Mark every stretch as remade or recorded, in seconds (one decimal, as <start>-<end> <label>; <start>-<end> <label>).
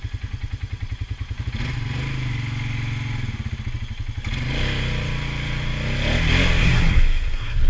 0.0-6.6 recorded; 6.6-7.7 remade